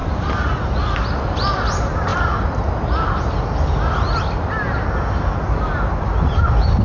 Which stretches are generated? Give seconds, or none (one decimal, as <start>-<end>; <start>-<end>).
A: none